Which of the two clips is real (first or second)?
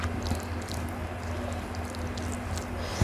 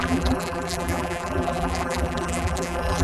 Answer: first